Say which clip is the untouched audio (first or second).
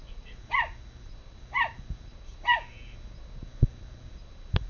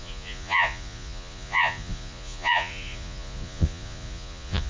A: first